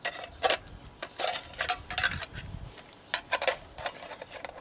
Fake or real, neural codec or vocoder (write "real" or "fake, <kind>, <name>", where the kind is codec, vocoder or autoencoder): real